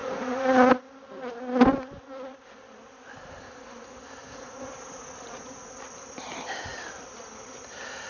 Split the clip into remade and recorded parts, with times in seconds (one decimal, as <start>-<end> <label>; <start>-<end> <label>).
0.0-0.7 remade; 0.7-4.2 recorded; 4.2-5.7 remade; 5.7-8.1 recorded